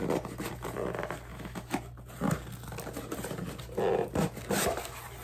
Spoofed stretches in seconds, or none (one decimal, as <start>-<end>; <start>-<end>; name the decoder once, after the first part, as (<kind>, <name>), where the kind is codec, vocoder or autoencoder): 1.3-1.8 (autoencoder, DAC-VAE)